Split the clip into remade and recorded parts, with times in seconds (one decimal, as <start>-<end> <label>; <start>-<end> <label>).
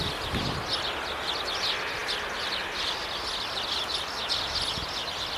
0.0-5.4 recorded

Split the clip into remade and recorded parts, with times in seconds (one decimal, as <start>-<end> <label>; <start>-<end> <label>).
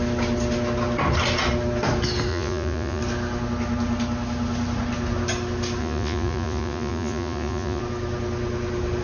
0.0-2.3 recorded; 2.3-3.0 remade; 3.0-5.8 recorded; 5.8-7.8 remade; 7.8-9.0 recorded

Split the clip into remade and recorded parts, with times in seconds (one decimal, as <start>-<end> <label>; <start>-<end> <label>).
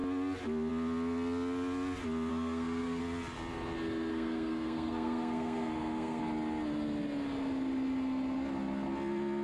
0.0-2.3 recorded; 2.3-3.0 remade; 3.0-4.1 recorded; 4.1-6.2 remade; 6.2-9.4 recorded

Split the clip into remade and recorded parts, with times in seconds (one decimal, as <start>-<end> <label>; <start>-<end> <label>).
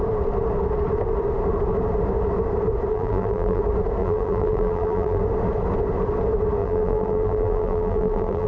0.0-2.9 recorded; 2.9-3.6 remade; 3.6-4.0 recorded; 4.0-5.2 remade; 5.2-6.6 recorded; 6.6-8.5 remade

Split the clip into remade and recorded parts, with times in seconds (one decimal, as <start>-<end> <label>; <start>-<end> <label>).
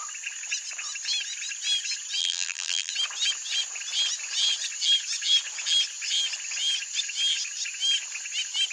0.0-2.2 recorded; 2.2-2.9 remade; 2.9-8.7 recorded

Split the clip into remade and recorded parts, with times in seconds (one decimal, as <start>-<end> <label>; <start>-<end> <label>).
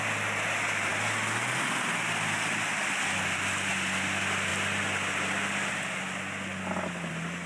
0.0-7.5 recorded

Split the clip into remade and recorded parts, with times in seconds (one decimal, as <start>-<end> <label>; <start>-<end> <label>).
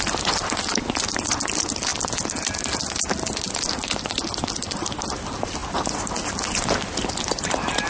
0.0-7.9 recorded